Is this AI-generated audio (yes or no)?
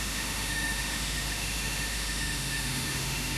yes